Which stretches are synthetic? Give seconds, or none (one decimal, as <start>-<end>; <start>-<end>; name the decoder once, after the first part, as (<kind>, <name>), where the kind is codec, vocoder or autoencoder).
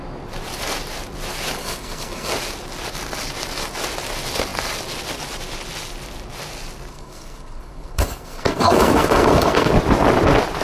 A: 1.6-2.3 (codec, SNAC); 6.9-9.7